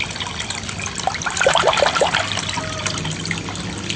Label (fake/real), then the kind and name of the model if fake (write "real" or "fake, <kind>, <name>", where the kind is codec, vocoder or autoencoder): real